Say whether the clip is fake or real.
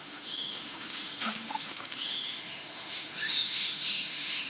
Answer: fake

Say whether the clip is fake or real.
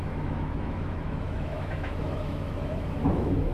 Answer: fake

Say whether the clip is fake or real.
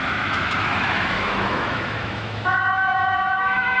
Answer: fake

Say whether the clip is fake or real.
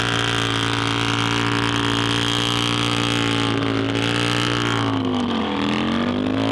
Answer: real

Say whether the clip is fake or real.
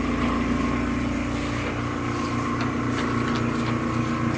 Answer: real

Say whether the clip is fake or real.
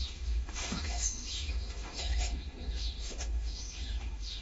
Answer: fake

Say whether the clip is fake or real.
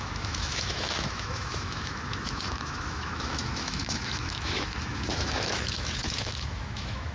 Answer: fake